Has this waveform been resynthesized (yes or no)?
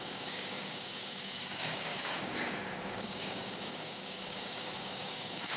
yes